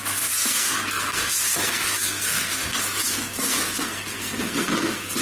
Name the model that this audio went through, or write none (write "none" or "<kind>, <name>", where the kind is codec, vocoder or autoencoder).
codec, SNAC